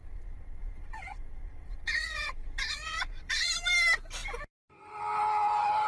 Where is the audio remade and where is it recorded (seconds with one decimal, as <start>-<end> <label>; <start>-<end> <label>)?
0.0-3.5 remade; 3.5-5.9 recorded